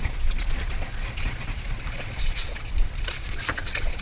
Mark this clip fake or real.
fake